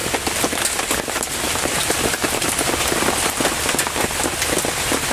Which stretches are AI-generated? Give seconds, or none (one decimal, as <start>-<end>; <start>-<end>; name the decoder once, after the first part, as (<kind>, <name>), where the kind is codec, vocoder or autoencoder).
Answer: none